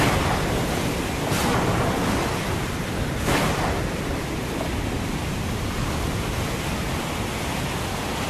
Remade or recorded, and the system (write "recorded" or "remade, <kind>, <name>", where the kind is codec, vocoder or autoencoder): recorded